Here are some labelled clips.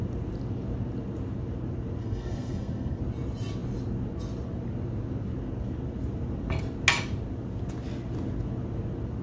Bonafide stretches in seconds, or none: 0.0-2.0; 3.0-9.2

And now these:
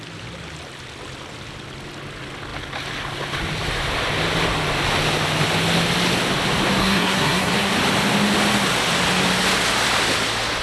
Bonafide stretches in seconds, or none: 0.0-6.8; 7.7-10.6

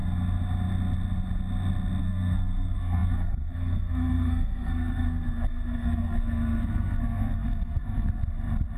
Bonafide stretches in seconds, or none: 0.0-2.0; 8.2-8.8

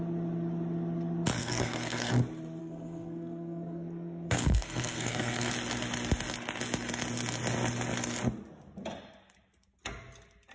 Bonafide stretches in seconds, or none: 0.0-1.4; 2.1-2.6; 5.5-10.5

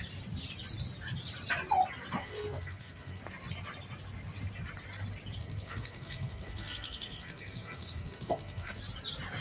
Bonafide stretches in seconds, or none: 0.0-2.2; 3.2-5.4; 8.8-9.4

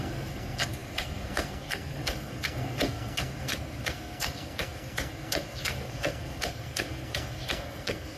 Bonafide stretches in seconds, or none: none